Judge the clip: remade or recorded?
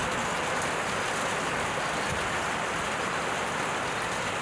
recorded